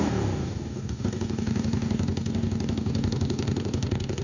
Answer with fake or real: fake